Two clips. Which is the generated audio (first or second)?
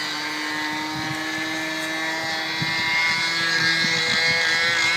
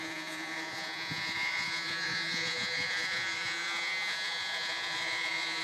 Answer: second